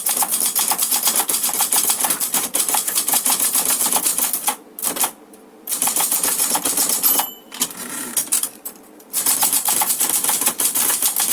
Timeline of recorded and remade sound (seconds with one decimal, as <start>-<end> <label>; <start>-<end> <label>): 0.0-4.1 remade; 4.1-7.4 recorded; 7.4-11.3 remade